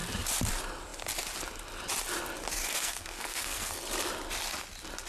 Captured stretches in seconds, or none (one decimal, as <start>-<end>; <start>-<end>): 0.0-2.6; 3.7-5.1